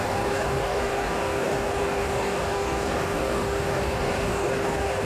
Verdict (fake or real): fake